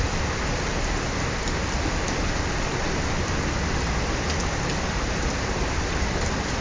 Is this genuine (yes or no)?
yes